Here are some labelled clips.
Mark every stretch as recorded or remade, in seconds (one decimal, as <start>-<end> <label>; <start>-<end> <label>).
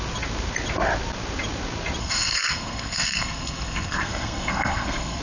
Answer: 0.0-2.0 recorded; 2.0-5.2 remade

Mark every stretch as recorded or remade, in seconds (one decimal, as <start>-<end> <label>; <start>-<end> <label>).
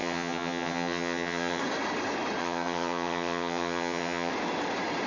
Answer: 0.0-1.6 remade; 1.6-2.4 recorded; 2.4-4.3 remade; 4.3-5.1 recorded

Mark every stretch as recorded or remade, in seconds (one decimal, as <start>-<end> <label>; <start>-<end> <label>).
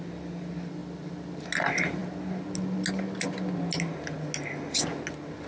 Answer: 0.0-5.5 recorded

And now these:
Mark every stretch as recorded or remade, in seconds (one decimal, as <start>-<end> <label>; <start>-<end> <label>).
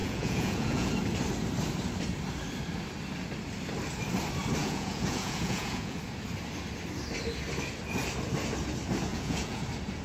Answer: 0.0-0.9 remade; 0.9-4.6 recorded; 4.6-6.0 remade; 6.0-9.1 recorded; 9.1-9.6 remade; 9.6-10.0 recorded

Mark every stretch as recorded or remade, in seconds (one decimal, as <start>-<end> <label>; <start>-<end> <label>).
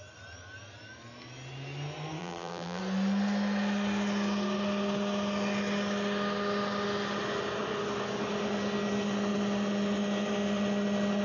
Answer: 0.0-2.2 recorded; 2.2-2.8 remade; 2.8-11.2 recorded